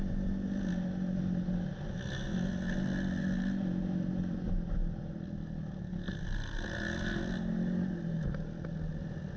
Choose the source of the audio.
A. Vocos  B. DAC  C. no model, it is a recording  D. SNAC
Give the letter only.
C